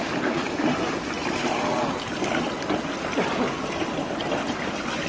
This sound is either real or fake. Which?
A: real